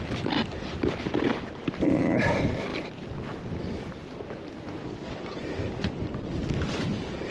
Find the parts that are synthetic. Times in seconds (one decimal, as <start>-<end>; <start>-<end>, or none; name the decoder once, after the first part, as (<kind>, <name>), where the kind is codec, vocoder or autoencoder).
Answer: 4.8-5.4 (vocoder, WaveNeXt)